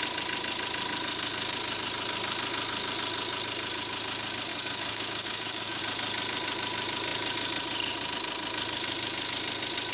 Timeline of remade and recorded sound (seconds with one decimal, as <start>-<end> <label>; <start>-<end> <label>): 0.0-4.5 recorded; 4.5-5.8 remade; 5.8-9.9 recorded